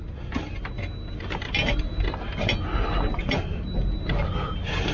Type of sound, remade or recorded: recorded